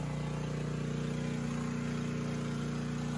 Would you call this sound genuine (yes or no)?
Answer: yes